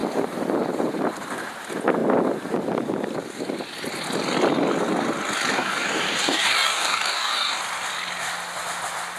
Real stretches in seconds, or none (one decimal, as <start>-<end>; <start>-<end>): 0.0-5.5; 7.6-9.2